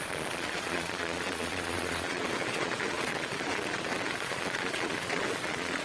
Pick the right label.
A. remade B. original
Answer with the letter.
A